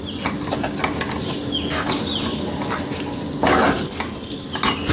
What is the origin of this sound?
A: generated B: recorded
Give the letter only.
B